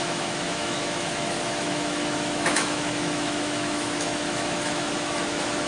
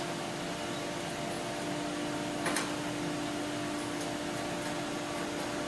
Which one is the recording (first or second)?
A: second